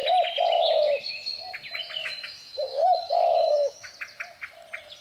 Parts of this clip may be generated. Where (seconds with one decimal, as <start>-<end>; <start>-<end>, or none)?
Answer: 2.0-3.9